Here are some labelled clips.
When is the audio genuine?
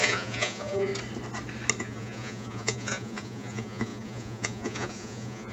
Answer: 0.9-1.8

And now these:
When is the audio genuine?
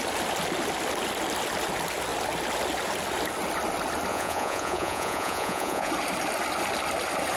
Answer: 0.0-4.1; 5.9-7.4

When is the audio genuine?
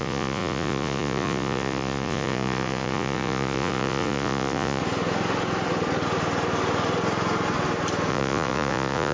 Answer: 4.8-8.1